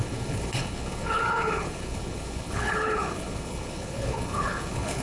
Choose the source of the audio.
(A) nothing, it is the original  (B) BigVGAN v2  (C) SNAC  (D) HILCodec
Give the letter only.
D